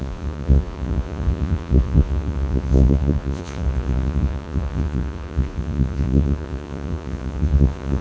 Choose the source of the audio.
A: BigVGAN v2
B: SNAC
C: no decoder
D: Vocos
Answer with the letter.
D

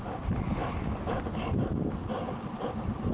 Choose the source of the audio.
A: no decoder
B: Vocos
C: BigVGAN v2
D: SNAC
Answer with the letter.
A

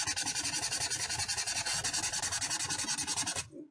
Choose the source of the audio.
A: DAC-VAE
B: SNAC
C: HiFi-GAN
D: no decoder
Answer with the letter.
D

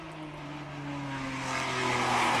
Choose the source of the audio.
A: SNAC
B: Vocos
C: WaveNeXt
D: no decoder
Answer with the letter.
D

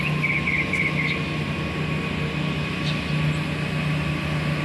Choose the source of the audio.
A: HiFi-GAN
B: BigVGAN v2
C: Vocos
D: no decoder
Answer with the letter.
D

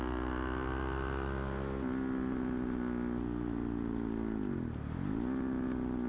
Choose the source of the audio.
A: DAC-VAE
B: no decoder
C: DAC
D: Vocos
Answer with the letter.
B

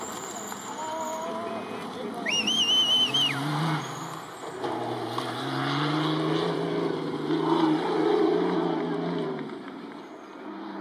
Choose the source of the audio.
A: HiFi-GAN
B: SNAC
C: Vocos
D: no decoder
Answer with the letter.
D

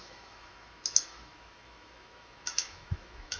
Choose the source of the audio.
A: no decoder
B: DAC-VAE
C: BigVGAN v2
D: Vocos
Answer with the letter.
B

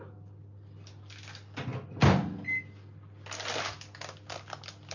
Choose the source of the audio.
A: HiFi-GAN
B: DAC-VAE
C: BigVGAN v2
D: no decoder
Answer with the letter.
D